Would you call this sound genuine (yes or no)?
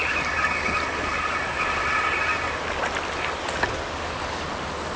yes